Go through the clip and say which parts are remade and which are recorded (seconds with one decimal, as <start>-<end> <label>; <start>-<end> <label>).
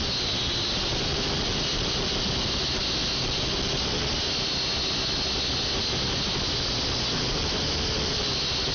0.0-8.7 recorded